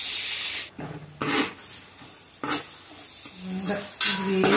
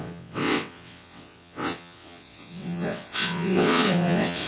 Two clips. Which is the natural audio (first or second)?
first